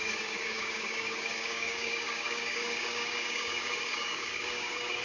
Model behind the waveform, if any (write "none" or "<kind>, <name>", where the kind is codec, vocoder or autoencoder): codec, DAC